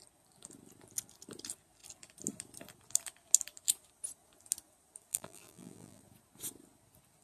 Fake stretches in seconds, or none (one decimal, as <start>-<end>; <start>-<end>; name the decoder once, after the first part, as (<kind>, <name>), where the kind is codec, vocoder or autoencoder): 5.1-6.0 (vocoder, BigVGAN v2)